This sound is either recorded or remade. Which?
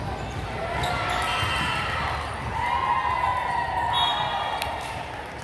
recorded